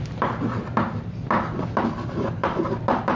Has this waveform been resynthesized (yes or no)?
no